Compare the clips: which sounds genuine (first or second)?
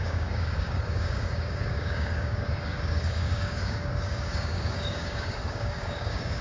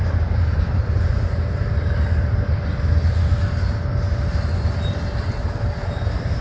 second